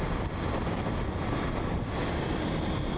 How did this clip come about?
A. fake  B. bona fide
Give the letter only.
B